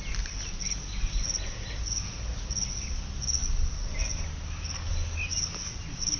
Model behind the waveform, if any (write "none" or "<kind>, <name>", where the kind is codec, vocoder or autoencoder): none